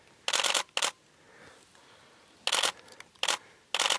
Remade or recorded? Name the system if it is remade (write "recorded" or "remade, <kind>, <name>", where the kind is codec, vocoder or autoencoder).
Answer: recorded